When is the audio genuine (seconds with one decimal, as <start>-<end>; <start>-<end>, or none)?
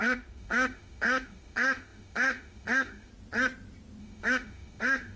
3.1-4.0